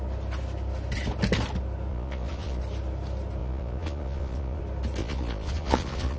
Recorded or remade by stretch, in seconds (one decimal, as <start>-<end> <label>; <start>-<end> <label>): 0.0-1.9 recorded; 1.9-2.6 remade; 2.6-3.4 recorded; 3.4-4.6 remade; 4.6-5.0 recorded; 5.0-6.2 remade